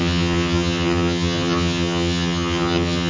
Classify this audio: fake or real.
fake